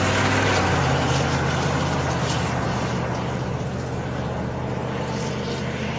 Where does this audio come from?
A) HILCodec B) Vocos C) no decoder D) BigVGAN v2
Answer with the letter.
C